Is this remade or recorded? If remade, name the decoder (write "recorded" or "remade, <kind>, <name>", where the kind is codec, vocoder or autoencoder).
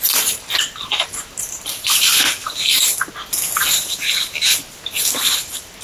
remade, vocoder, BigVGAN v2